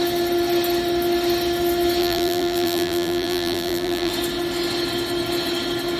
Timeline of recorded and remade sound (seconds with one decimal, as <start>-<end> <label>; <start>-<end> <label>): 0.0-2.0 recorded; 2.0-4.1 remade; 4.1-6.0 recorded